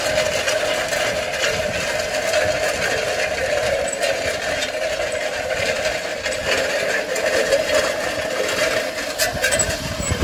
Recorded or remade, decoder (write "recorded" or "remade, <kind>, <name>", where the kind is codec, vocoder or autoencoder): recorded